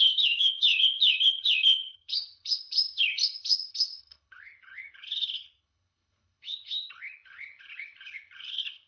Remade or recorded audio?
remade